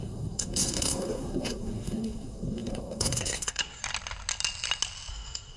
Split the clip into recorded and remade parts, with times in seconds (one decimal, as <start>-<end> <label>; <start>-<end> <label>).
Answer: 0.0-3.8 remade; 3.8-5.1 recorded; 5.1-5.6 remade